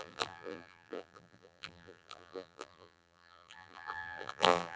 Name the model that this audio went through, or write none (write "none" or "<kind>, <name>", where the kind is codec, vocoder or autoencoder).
vocoder, BigVGAN v2